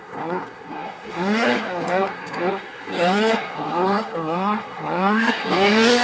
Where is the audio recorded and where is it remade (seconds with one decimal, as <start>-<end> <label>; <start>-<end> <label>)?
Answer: 0.0-6.0 remade